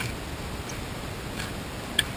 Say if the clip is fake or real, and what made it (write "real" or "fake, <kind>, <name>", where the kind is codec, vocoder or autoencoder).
real